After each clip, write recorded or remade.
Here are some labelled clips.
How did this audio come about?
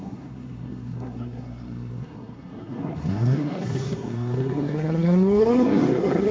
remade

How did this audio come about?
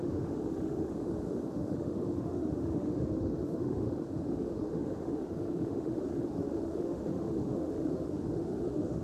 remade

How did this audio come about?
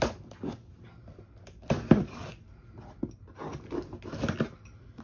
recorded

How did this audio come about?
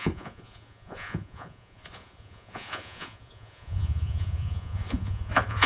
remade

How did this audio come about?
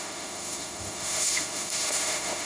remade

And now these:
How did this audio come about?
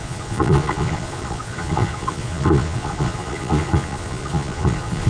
remade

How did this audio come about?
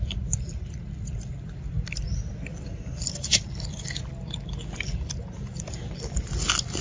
recorded